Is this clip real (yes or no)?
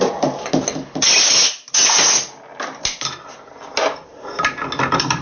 yes